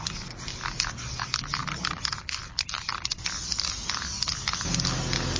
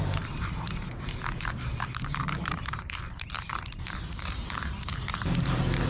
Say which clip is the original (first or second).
first